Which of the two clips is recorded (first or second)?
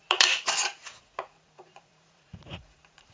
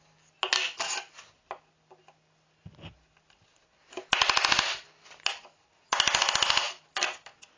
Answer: second